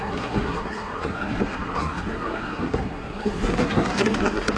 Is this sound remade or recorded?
remade